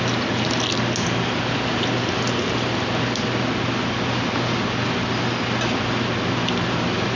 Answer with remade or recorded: recorded